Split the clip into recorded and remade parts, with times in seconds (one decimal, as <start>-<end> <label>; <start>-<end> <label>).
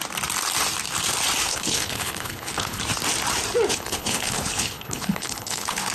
0.0-1.5 recorded; 1.5-2.8 remade; 2.8-3.7 recorded; 3.7-5.9 remade